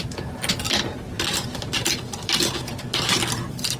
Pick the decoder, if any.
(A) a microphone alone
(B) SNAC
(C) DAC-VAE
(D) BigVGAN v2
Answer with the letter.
A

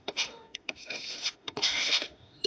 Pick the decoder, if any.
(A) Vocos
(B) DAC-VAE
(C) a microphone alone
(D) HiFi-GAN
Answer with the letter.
B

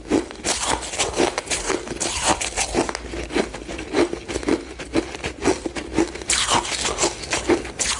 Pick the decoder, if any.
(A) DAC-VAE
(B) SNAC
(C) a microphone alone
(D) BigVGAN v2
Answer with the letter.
C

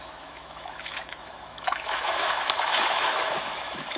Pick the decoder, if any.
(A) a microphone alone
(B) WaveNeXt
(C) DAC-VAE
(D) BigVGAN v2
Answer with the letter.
C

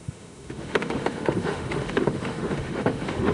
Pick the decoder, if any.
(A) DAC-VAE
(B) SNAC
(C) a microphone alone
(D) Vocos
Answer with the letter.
A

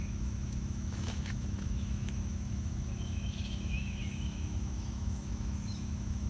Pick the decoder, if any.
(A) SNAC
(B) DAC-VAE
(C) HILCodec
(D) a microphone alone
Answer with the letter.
B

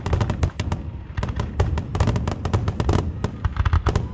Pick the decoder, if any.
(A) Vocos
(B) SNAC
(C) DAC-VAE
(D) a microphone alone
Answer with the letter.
D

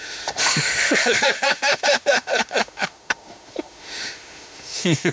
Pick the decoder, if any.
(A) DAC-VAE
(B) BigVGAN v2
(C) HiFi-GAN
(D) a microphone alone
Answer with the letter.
A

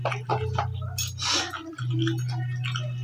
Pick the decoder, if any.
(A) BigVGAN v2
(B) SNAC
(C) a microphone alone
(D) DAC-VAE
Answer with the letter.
C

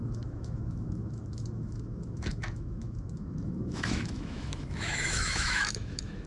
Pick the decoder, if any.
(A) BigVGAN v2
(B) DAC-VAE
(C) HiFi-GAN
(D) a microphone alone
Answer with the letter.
B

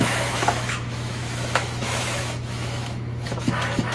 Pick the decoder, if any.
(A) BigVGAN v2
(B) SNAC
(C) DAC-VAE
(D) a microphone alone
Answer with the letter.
C